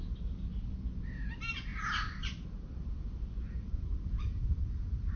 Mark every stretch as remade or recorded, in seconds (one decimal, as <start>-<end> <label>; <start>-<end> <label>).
0.0-5.2 recorded